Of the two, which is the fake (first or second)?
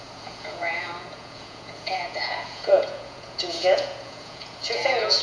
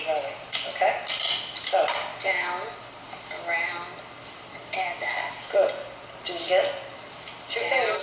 first